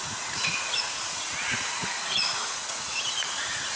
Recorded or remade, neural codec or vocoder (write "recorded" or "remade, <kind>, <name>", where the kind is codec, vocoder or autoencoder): remade, vocoder, Vocos